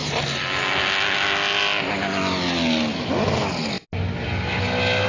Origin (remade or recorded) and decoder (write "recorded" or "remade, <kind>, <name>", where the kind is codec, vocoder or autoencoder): recorded